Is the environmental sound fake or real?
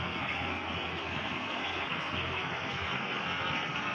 fake